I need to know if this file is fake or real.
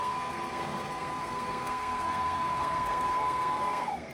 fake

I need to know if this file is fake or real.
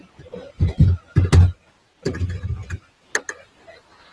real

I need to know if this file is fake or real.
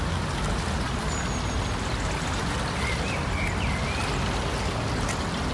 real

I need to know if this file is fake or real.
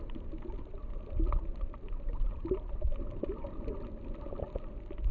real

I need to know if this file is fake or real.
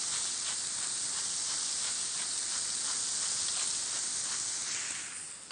real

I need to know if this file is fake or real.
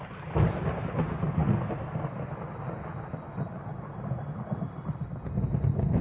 real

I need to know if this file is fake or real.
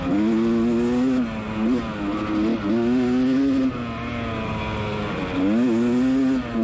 real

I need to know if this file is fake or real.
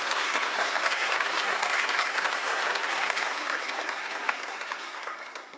fake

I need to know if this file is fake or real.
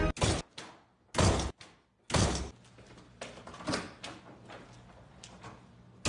real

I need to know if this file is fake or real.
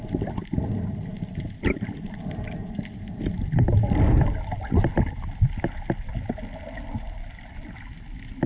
real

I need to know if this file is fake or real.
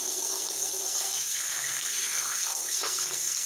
fake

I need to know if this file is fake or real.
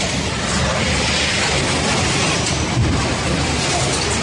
real